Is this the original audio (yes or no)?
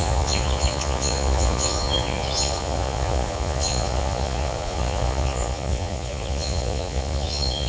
no